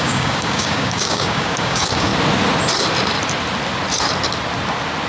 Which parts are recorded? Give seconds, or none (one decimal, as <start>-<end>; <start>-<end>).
2.1-5.1